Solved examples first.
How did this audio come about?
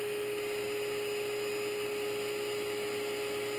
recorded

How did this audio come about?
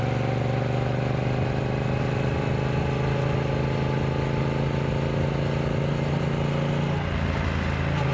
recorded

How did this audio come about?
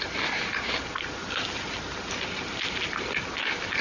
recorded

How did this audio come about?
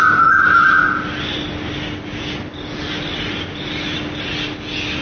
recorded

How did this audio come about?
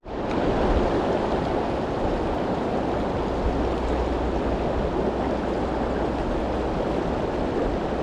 recorded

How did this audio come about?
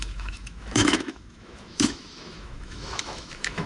remade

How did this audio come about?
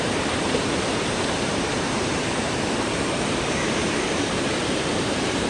remade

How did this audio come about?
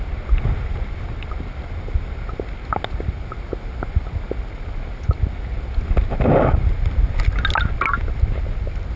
recorded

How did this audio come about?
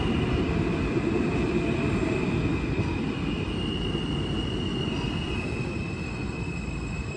recorded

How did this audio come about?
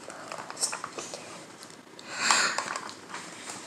remade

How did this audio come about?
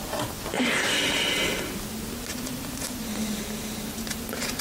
recorded